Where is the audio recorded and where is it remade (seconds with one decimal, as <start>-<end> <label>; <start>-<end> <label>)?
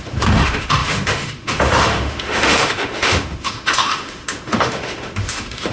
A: 0.0-5.7 remade